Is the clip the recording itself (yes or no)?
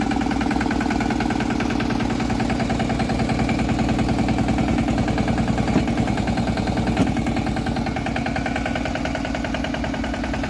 yes